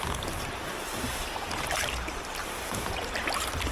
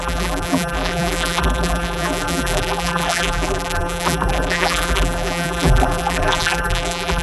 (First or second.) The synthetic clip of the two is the second